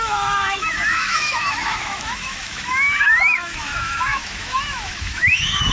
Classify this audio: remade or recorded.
remade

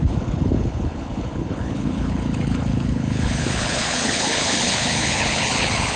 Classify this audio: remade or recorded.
remade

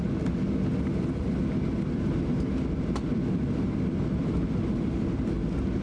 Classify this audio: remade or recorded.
recorded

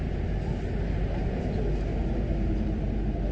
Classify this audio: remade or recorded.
recorded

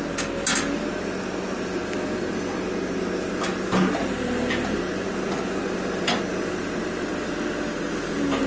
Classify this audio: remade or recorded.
recorded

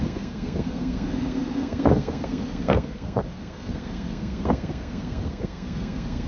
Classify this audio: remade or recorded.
remade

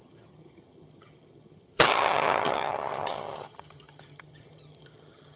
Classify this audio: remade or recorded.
remade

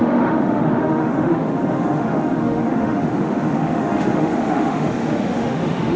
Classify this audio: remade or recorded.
remade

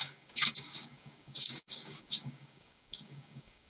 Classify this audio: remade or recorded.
remade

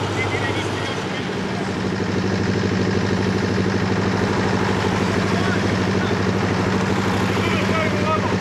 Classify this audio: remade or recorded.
recorded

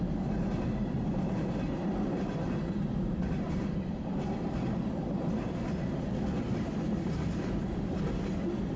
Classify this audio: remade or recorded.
recorded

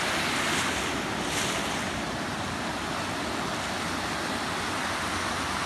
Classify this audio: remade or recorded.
recorded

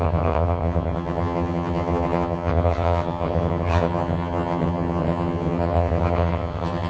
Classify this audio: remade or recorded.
remade